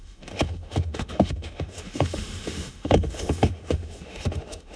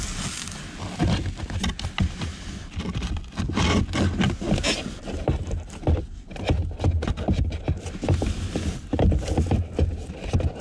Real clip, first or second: second